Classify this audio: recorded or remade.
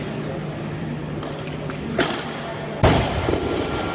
recorded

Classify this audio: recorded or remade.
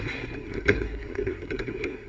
remade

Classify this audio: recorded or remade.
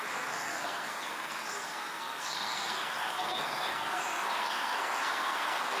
remade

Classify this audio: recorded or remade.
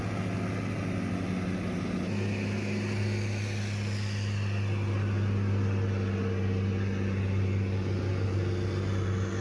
recorded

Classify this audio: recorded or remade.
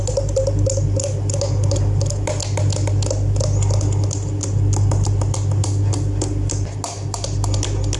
recorded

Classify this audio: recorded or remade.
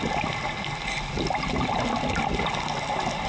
recorded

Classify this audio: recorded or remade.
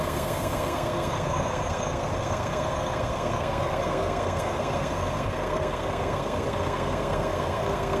remade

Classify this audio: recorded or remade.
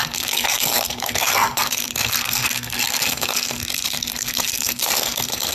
remade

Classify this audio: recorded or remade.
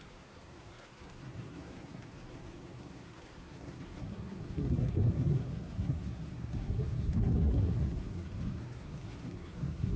remade